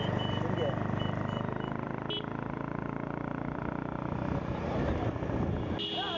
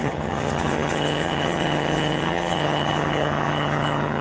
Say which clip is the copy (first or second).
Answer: second